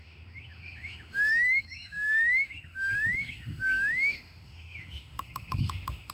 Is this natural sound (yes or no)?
no